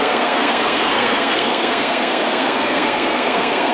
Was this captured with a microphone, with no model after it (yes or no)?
no